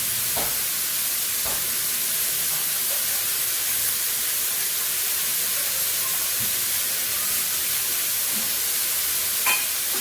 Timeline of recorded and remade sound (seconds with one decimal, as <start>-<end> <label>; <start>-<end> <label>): 0.0-7.6 recorded; 7.6-8.2 remade; 8.2-10.0 recorded

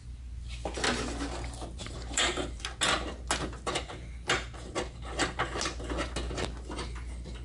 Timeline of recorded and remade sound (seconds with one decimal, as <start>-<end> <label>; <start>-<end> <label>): 0.0-1.8 recorded; 1.8-2.6 remade; 2.6-7.4 recorded

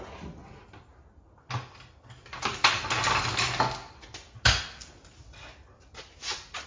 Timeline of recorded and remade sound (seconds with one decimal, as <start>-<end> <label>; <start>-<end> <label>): 0.0-6.7 recorded

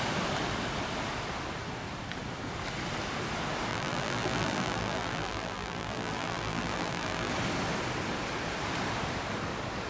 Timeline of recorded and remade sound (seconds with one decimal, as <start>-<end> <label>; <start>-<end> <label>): 0.0-3.7 recorded; 3.7-7.3 remade; 7.3-9.9 recorded

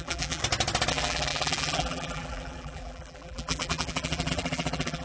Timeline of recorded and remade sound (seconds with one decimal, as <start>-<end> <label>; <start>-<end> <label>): 0.0-0.4 remade; 0.4-0.9 recorded; 0.9-5.0 remade